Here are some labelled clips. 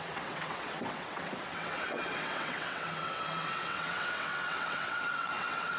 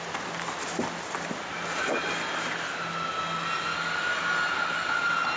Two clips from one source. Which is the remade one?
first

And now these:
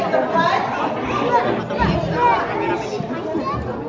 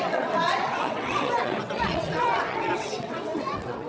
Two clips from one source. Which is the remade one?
second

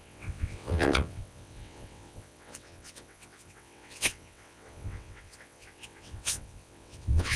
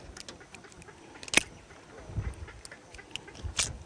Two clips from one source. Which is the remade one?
first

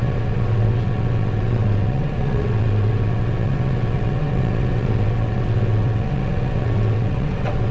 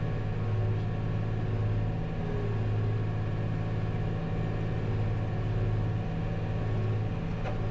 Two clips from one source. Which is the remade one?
first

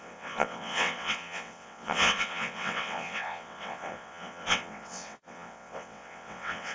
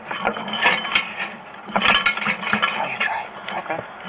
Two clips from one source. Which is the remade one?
first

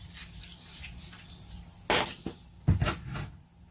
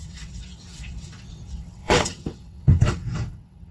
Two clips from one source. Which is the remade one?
second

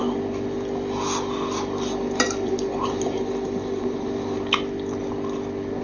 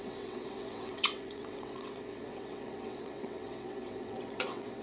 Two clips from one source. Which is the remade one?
second